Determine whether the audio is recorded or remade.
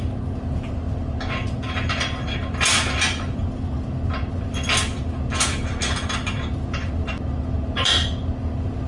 recorded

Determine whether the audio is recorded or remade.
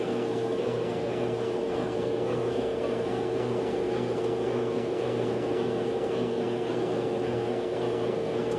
remade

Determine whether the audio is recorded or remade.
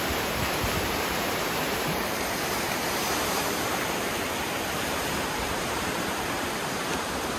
remade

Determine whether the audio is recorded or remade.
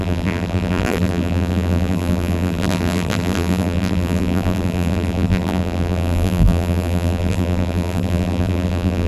remade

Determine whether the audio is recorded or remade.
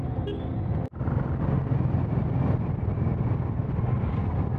recorded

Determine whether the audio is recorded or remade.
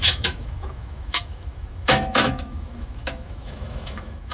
remade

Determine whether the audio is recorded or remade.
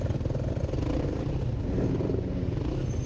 recorded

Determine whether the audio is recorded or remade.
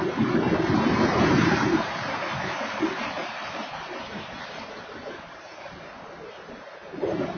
remade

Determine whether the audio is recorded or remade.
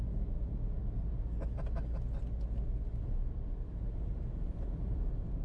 recorded